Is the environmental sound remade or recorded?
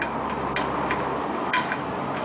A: remade